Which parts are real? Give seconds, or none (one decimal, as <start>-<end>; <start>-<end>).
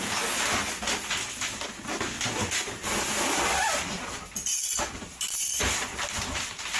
0.0-6.8